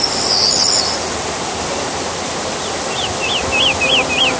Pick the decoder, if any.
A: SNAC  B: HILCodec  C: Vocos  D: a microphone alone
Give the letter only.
D